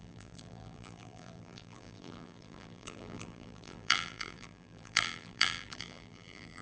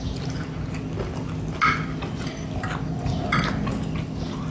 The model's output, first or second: first